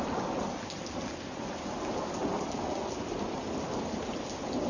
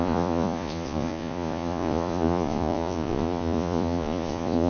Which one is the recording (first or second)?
first